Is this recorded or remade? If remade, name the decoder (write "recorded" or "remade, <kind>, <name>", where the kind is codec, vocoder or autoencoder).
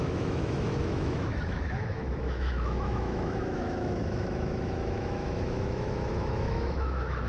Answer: remade, autoencoder, DAC-VAE